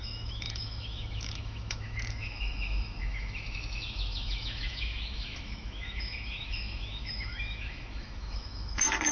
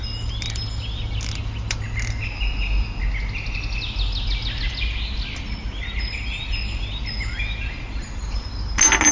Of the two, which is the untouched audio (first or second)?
second